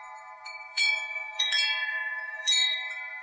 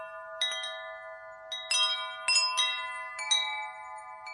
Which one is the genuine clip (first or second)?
second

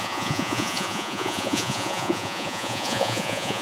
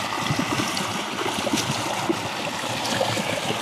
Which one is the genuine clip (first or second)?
second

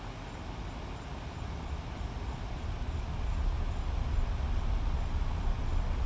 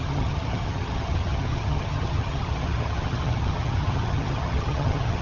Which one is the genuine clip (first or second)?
first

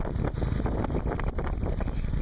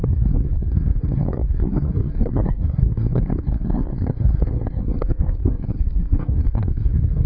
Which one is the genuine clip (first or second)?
first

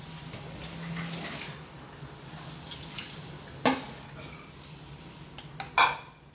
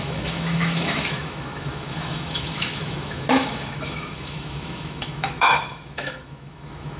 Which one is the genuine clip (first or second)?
first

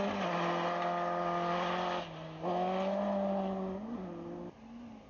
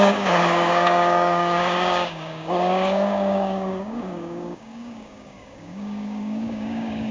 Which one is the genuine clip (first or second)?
first